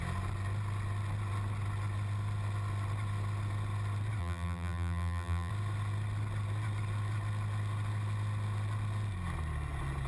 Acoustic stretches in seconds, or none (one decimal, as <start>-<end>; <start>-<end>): 0.0-4.2; 5.5-10.1